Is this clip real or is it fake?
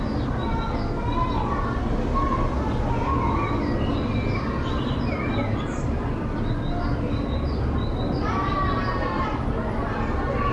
real